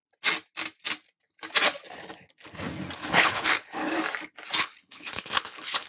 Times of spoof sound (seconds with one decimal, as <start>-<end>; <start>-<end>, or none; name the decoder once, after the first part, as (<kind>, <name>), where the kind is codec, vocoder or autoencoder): 3.0-3.8 (codec, HILCodec); 4.6-5.9